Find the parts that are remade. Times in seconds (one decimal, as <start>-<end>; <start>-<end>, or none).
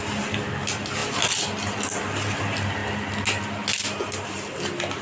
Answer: none